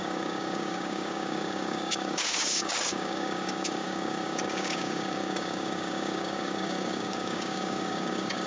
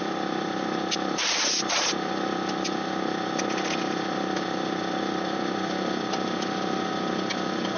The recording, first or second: second